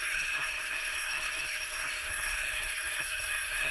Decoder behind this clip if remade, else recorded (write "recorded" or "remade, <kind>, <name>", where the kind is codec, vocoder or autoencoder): remade, codec, SNAC